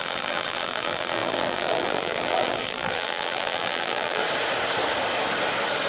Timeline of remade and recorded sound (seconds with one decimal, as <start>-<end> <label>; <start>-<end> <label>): 0.0-4.2 remade; 4.2-5.9 recorded

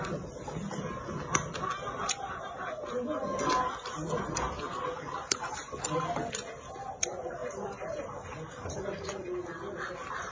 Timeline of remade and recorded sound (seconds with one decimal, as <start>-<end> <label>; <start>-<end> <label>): 0.0-10.3 recorded